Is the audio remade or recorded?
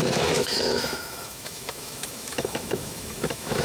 remade